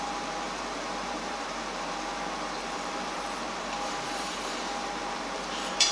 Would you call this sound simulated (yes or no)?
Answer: yes